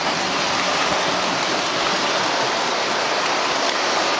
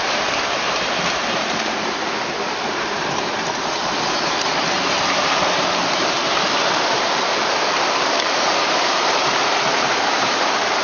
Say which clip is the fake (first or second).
second